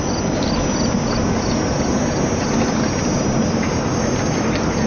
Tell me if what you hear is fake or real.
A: real